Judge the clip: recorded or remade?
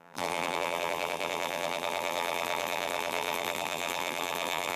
remade